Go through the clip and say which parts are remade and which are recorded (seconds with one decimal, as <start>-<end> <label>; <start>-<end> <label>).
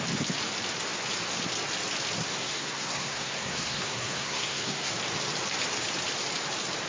0.0-2.3 recorded; 2.3-4.9 remade; 4.9-6.9 recorded